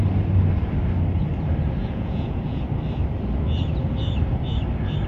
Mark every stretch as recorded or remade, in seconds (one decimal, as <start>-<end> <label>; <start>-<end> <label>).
0.0-1.8 recorded; 1.8-2.6 remade; 2.6-5.1 recorded